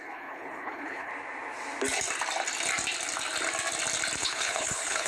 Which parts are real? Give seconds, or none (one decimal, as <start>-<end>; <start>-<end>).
1.1-4.2